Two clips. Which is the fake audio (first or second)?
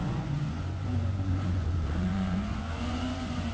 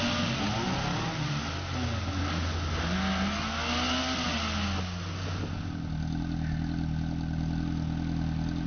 first